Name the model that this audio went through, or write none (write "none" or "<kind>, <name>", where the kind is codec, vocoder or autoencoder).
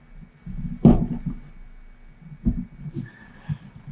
none